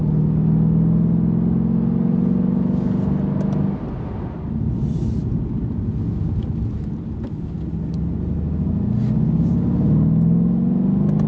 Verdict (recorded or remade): recorded